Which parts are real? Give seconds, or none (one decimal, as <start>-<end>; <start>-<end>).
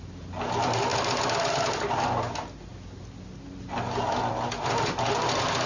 0.0-5.7